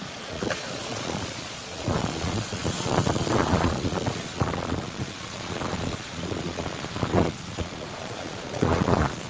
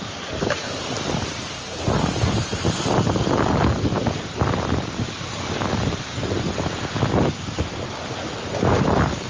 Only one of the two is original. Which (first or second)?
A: second